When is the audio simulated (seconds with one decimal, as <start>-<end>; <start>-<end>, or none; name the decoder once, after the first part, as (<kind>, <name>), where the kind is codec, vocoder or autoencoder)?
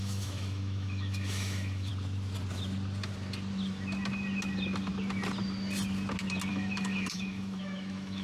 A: 0.0-1.9 (autoencoder, DAC-VAE); 6.5-8.2